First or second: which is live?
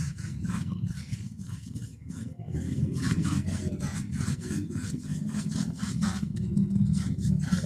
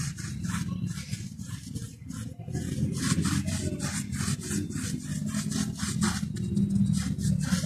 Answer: second